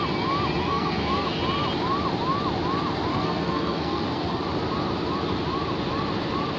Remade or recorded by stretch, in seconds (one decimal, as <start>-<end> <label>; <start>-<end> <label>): 0.0-0.6 recorded; 0.6-1.4 remade; 1.4-3.1 recorded; 3.1-4.4 remade; 4.4-6.6 recorded